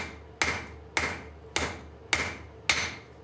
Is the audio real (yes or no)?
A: yes